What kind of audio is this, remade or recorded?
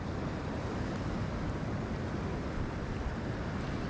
recorded